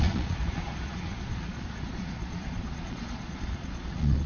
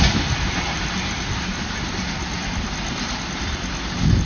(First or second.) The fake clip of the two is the first